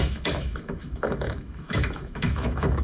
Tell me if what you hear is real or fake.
fake